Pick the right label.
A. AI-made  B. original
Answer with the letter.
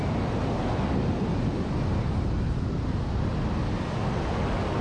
B